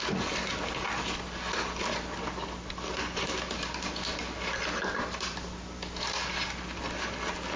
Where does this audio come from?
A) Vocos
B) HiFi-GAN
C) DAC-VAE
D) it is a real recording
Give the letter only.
D